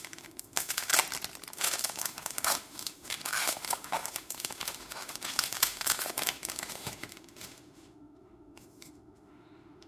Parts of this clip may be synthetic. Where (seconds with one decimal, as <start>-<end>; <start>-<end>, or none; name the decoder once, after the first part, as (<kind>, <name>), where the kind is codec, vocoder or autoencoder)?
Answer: 0.0-0.9 (autoencoder, DAC-VAE); 1.5-9.9